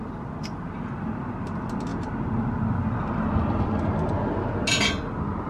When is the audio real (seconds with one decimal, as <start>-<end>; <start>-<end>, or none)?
0.0-5.5